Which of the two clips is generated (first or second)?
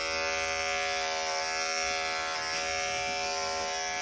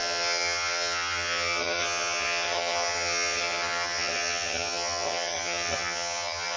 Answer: second